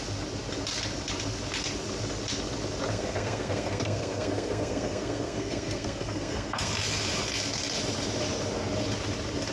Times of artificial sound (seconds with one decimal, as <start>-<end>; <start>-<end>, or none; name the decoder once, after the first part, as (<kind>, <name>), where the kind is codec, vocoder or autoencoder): 2.9-6.7 (codec, SNAC)